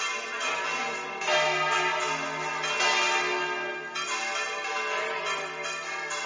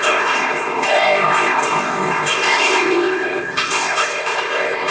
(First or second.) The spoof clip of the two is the second